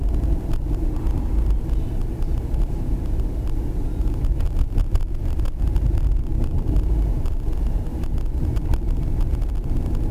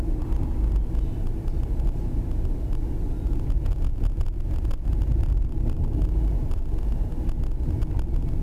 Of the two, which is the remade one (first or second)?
first